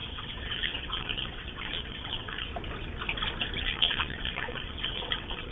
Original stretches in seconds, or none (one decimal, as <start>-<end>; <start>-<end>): 2.5-3.6